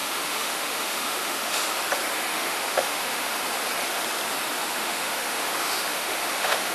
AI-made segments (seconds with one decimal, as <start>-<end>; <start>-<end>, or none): 0.0-1.8; 2.3-3.4; 4.6-6.7